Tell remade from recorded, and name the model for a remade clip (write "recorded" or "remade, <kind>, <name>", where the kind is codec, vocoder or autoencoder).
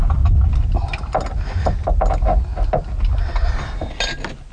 recorded